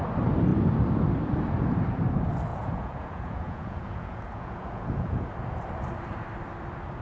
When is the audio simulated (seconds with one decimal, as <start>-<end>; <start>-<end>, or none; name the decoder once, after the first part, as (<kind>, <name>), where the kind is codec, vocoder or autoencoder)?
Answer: 2.5-5.3 (vocoder, Vocos)